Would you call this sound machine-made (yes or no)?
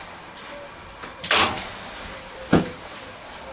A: no